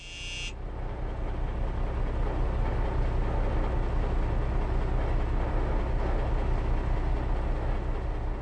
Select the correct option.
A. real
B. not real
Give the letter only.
A